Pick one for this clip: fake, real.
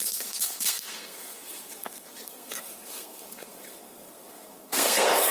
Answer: fake